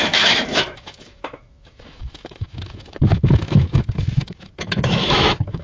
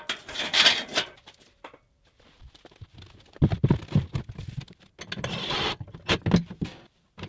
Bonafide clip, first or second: second